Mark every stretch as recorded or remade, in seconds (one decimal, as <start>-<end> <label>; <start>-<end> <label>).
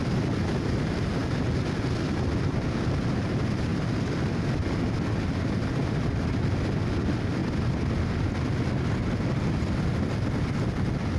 0.0-11.2 recorded